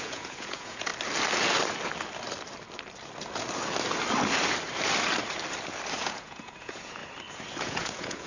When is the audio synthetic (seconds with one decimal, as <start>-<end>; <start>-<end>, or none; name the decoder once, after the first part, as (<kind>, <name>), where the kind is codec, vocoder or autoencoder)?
0.0-0.9 (vocoder, Vocos); 5.9-7.0; 7.6-8.3